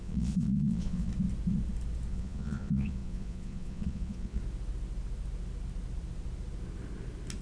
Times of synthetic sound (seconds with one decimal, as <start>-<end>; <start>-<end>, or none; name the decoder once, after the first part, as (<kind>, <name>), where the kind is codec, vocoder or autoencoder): 0.0-1.1 (vocoder, Vocos); 2.1-4.4